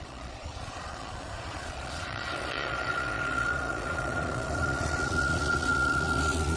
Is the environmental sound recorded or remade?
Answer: remade